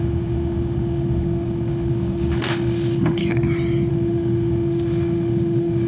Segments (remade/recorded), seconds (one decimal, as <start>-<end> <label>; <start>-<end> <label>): 0.0-3.2 remade; 3.2-3.9 recorded; 3.9-5.9 remade